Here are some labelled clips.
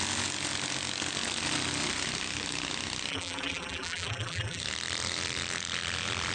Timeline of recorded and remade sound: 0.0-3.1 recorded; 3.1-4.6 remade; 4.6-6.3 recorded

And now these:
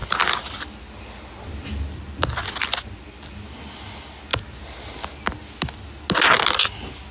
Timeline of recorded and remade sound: 0.0-7.1 recorded